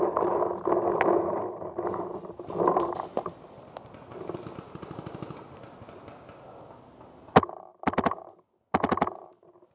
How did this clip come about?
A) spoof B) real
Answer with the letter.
B